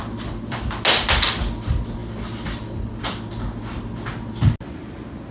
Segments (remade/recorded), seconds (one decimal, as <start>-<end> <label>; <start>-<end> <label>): 0.0-5.3 recorded